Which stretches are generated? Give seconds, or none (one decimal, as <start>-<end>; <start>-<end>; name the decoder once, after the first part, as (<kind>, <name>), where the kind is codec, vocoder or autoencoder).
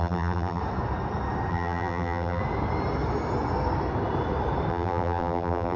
0.0-0.6 (vocoder, BigVGAN v2); 1.5-2.4; 4.7-5.8